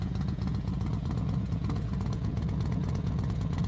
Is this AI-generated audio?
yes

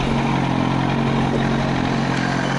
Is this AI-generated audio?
no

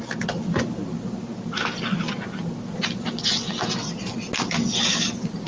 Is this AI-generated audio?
no